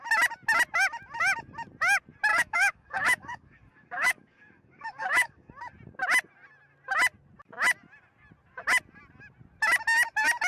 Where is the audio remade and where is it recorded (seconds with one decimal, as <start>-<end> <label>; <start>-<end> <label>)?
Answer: 0.0-2.3 recorded; 2.3-5.5 remade; 5.5-10.5 recorded